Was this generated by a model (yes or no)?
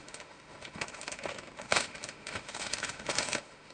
yes